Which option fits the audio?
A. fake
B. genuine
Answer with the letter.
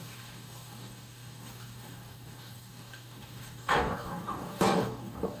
A